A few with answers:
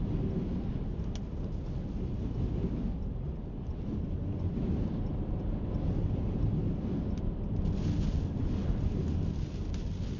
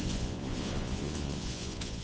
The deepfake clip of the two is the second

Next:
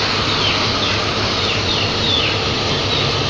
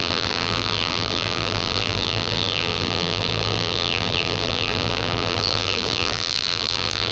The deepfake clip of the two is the second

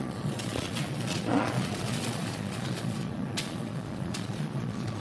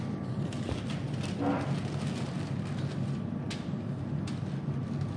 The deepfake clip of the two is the first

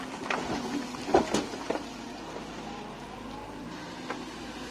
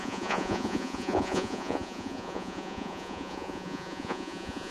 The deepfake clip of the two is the second